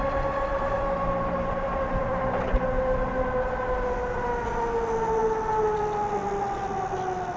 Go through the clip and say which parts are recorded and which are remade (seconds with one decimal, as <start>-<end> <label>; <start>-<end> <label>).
0.0-7.4 recorded